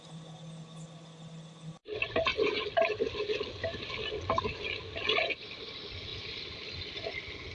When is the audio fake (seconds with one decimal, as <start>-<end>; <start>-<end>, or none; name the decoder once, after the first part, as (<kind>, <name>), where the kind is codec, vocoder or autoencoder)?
none